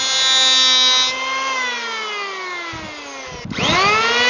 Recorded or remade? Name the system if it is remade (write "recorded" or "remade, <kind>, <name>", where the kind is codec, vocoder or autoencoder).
recorded